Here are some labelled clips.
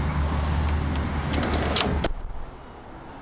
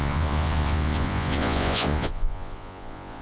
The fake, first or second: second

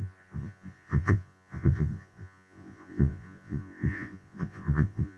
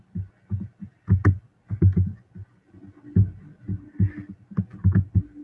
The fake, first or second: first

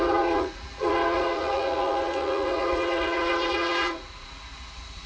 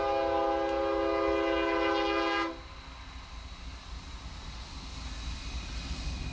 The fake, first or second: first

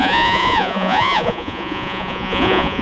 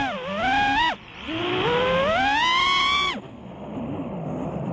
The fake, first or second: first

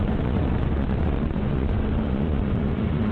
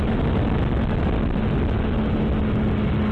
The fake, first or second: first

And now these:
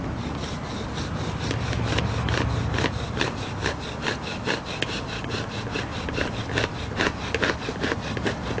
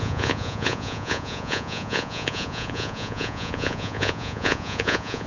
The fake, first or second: second